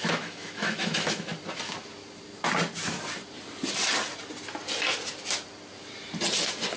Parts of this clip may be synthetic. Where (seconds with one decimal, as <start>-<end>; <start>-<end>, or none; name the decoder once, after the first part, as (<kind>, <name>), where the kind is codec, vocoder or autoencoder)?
0.0-1.3 (autoencoder, DAC-VAE)